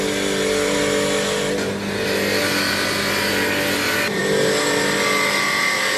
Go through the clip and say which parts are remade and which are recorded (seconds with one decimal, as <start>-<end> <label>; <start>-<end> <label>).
0.0-6.0 recorded